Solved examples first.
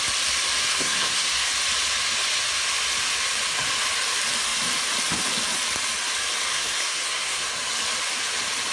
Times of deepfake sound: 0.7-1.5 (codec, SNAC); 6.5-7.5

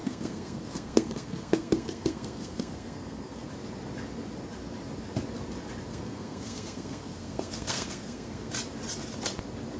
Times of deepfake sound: 0.0-3.5 (codec, SNAC); 5.9-8.5

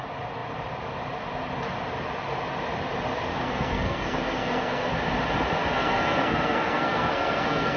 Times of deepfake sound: 3.3-4.9 (codec, SNAC); 5.6-7.8

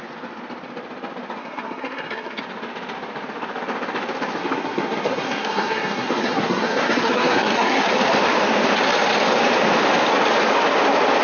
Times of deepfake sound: 1.4-2.4 (codec, SNAC); 4.4-7.9

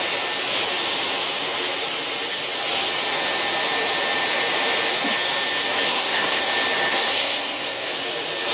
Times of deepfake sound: 5.9-6.4 (codec, SNAC); 6.9-7.9